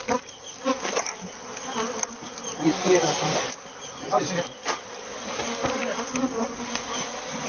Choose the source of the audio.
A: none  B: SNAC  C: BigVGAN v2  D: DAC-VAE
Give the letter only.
A